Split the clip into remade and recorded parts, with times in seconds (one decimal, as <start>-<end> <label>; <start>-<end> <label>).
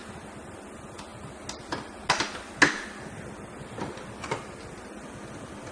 0.0-5.7 recorded